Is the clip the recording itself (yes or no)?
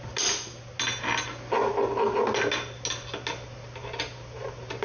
yes